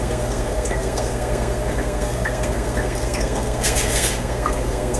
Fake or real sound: fake